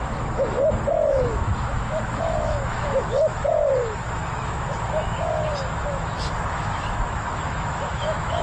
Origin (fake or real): fake